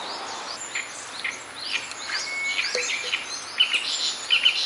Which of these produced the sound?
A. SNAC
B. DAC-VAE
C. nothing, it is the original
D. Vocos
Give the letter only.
C